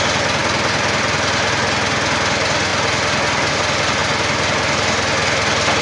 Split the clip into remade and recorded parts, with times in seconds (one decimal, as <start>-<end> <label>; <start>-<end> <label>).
0.0-5.8 recorded